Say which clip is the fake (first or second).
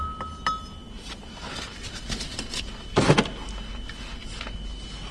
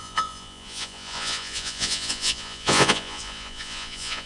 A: second